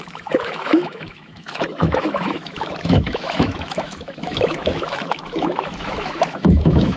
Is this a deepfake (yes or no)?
yes